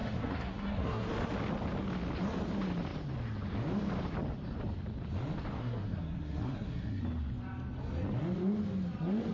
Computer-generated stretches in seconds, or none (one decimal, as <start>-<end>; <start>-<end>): 0.0-1.1; 5.6-7.0